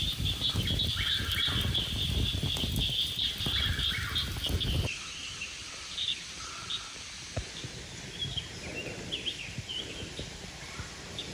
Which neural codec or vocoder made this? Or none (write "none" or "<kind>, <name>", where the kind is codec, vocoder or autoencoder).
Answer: vocoder, BigVGAN v2